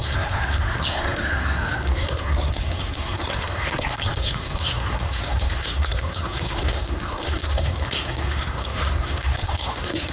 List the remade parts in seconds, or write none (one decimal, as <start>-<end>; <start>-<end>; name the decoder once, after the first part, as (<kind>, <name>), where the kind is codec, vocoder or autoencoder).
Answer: 0.0-10.1 (codec, SNAC)